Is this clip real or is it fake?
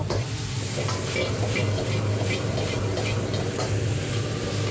real